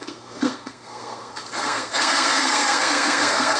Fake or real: fake